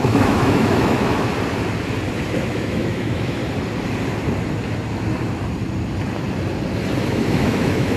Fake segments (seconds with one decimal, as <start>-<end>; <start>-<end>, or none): 0.0-1.3; 2.4-3.4; 7.0-8.0